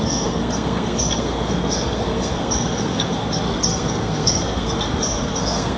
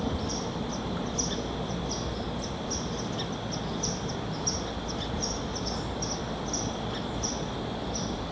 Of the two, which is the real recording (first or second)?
second